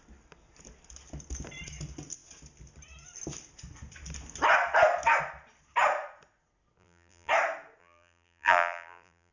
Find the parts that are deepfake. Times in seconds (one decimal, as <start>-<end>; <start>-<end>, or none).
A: 6.8-7.3; 7.8-9.3